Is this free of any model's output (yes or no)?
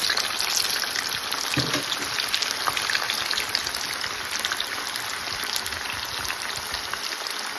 yes